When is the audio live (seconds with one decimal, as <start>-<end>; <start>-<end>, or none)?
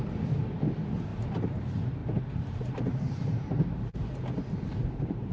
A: 0.0-1.1; 1.6-2.0